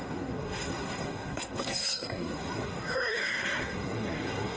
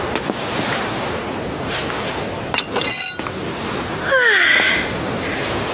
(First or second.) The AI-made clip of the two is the first